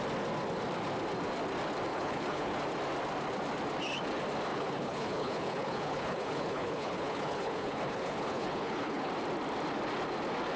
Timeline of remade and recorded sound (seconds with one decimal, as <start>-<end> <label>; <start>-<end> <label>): 0.0-1.9 recorded; 1.9-2.6 remade; 2.6-4.5 recorded; 4.5-9.1 remade; 9.1-10.6 recorded